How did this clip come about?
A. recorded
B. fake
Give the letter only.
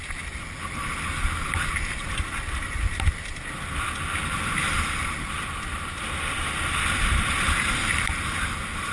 A